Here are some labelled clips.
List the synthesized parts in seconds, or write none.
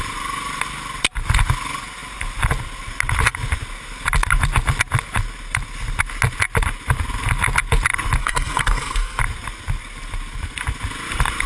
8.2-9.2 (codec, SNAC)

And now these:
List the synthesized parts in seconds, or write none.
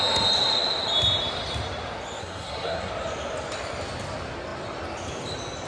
2.2-2.9 (codec, SNAC)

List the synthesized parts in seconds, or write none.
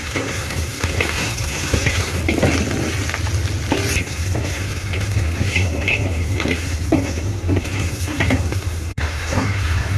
0.0-2.2 (codec, SNAC); 4.0-10.0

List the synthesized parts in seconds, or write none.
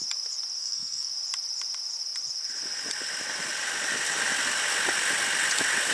0.6-1.1 (codec, SNAC)